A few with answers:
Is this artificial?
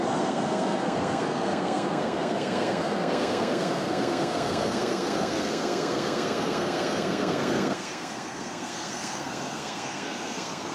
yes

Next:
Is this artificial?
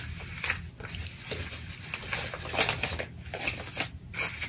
no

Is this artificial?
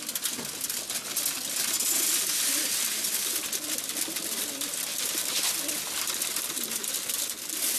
no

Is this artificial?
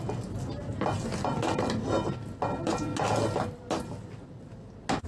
no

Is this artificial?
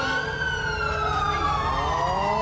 no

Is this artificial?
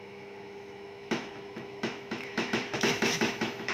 yes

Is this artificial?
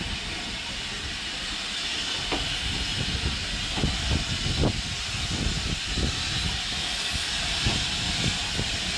no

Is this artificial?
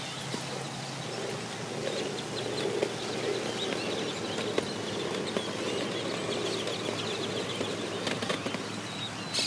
no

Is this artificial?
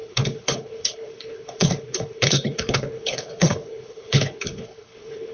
yes